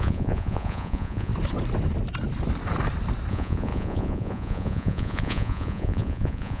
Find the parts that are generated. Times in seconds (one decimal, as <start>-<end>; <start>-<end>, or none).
0.0-1.3; 3.3-6.6

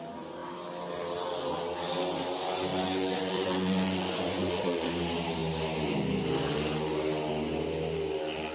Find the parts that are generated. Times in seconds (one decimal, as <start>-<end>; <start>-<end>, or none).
2.7-4.9